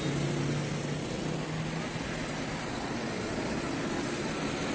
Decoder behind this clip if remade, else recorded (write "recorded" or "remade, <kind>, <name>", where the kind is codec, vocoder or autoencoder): recorded